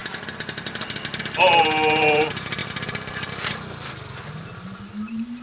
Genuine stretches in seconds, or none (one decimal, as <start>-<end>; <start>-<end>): 0.0-5.4